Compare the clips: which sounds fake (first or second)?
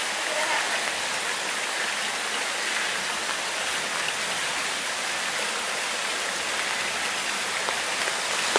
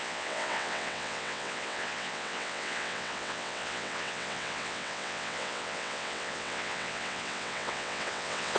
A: second